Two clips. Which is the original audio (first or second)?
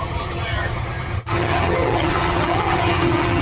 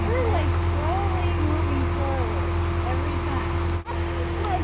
second